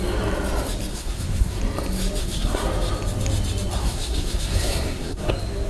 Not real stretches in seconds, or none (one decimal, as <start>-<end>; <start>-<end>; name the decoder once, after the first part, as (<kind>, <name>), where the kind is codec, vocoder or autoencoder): 0.9-1.6 (codec, SNAC); 2.2-2.7; 3.8-5.3

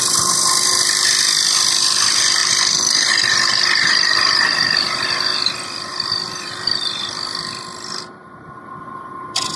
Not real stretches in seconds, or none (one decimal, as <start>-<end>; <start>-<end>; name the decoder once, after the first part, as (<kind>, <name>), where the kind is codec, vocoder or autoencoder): 0.0-9.6 (vocoder, BigVGAN v2)

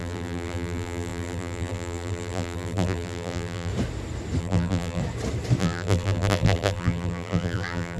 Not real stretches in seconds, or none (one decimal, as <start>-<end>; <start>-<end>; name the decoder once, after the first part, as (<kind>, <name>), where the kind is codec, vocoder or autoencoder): 0.0-3.7 (vocoder, BigVGAN v2); 4.4-5.0; 5.6-8.0

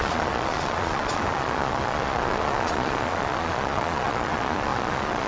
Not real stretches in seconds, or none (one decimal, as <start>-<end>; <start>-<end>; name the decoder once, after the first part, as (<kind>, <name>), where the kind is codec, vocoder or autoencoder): 0.0-5.3 (vocoder, Vocos)